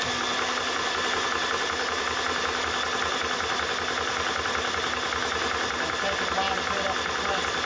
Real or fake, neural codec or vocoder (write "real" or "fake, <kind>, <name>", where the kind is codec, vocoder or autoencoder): real